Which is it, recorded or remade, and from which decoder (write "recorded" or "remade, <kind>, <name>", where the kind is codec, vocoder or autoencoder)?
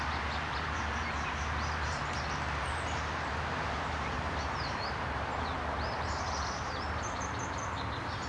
remade, vocoder, BigVGAN v2